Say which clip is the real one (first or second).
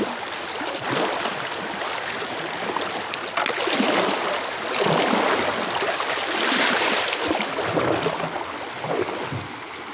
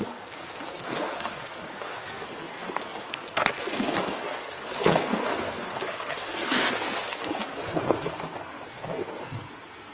first